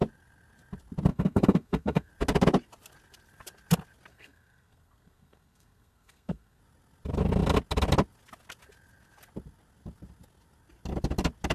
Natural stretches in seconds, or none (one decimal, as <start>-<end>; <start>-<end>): 0.0-1.1; 2.1-4.1; 6.6-11.5